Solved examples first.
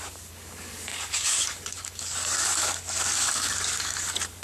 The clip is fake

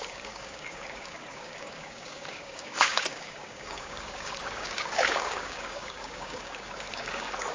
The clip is fake